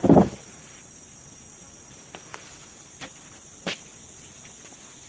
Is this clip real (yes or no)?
no